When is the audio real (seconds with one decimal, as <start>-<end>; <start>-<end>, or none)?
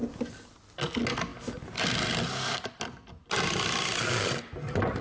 0.0-5.0